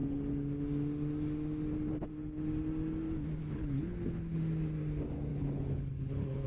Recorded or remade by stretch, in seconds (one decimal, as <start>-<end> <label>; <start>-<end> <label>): 0.0-3.4 recorded; 3.4-4.4 remade; 4.4-5.3 recorded; 5.3-6.5 remade